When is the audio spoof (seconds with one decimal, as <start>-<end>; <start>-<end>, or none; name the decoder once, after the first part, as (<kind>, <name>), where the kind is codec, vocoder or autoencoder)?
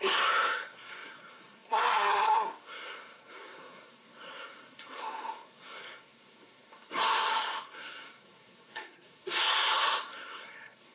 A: 0.0-10.9 (codec, SNAC)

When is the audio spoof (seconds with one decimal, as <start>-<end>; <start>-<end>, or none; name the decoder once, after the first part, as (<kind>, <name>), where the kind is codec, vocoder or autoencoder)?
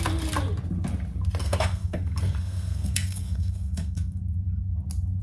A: 1.4-4.2 (codec, SNAC)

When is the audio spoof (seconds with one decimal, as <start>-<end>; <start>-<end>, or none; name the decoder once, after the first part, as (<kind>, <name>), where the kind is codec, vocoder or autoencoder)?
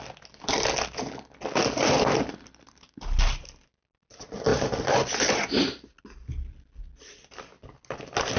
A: none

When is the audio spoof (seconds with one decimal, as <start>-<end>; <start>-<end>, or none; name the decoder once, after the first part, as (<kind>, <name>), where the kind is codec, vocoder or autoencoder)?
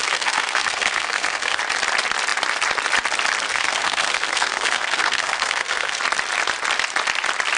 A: 0.0-1.6 (codec, SNAC); 3.5-6.0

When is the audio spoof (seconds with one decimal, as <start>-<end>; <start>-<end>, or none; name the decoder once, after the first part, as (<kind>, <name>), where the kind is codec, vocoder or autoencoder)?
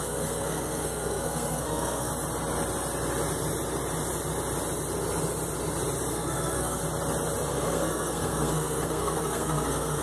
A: 0.0-2.1 (codec, SNAC); 6.1-6.8; 7.5-10.0